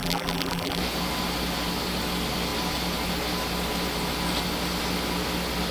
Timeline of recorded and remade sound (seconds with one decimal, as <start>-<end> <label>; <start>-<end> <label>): 0.0-0.8 remade; 0.8-5.7 recorded